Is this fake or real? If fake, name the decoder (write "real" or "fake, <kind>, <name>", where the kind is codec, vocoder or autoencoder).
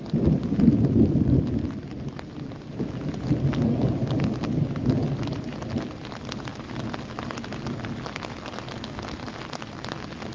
real